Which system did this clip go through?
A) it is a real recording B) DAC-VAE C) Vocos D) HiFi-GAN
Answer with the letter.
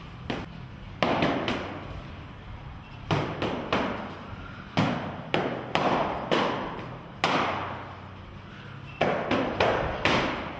A